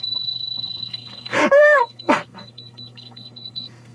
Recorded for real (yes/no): no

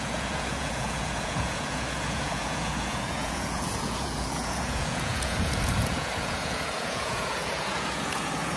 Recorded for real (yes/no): no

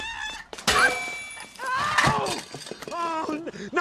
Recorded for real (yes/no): yes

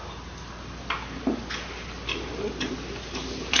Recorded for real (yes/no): yes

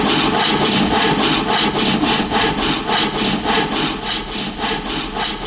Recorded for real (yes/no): yes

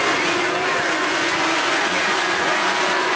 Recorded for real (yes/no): no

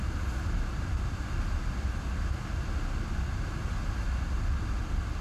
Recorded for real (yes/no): yes